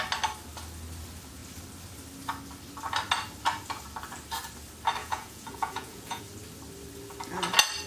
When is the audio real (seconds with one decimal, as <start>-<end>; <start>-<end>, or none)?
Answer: 0.0-5.0; 6.2-7.9